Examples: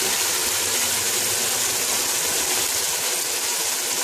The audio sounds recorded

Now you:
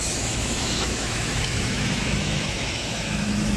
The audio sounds remade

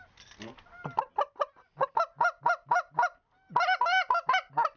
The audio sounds recorded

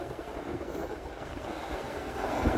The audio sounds remade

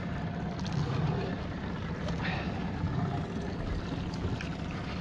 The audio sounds recorded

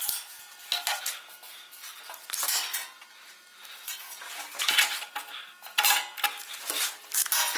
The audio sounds recorded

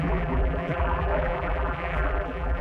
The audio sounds remade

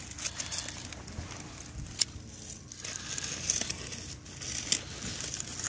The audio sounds recorded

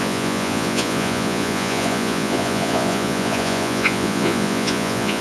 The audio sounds remade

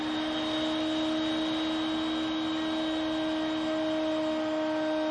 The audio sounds recorded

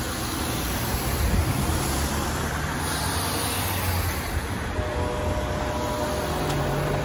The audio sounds recorded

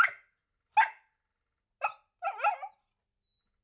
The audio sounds recorded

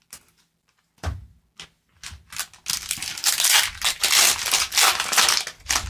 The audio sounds recorded